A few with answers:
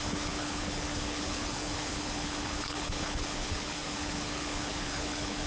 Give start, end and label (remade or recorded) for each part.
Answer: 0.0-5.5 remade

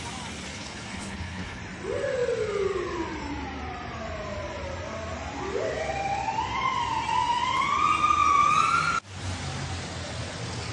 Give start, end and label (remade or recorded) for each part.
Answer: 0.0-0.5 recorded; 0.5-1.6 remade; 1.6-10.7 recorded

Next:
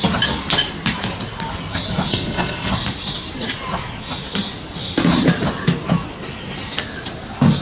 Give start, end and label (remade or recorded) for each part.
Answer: 0.0-2.1 recorded; 2.1-2.7 remade; 2.7-7.6 recorded

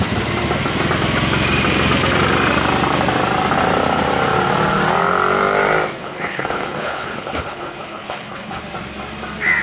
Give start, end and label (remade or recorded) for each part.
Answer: 0.0-6.0 recorded; 6.0-8.6 remade; 8.6-9.6 recorded

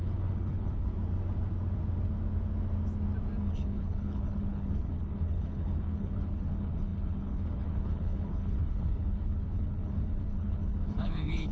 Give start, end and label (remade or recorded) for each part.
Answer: 0.0-0.9 remade; 0.9-3.4 recorded; 3.4-11.5 remade

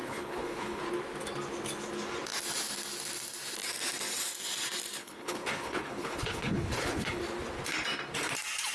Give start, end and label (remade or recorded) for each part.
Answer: 0.0-0.8 remade; 0.8-5.0 recorded; 5.0-7.2 remade; 7.2-8.7 recorded

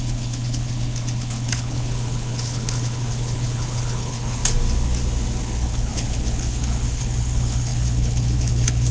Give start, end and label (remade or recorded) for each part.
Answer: 0.0-4.4 remade; 4.4-5.4 recorded; 5.4-8.9 remade

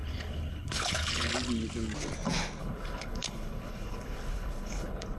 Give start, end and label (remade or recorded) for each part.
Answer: 0.0-1.3 remade; 1.3-2.6 recorded; 2.6-5.2 remade